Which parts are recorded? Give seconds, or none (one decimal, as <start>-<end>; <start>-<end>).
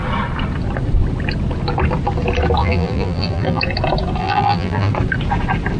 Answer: 0.0-2.6; 3.6-4.2; 4.9-5.8